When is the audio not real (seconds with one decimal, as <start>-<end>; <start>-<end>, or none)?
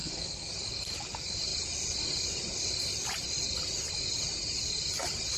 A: 0.0-0.5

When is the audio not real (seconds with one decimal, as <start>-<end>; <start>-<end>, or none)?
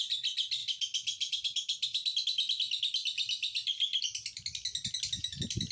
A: none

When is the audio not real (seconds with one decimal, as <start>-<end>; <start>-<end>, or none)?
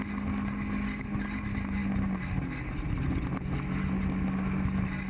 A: none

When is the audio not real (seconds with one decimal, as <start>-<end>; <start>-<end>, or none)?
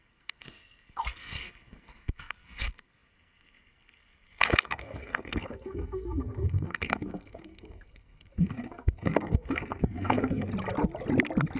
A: 0.0-10.5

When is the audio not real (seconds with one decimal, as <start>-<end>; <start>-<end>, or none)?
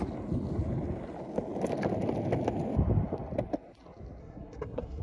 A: 4.2-5.0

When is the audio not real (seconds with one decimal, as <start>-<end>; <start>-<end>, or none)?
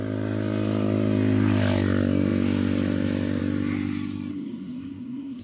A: 4.3-5.4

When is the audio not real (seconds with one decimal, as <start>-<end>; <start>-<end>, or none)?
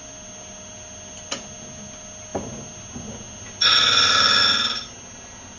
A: none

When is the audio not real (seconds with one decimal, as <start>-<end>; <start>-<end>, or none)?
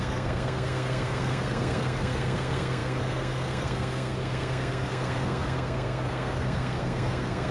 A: 0.0-7.5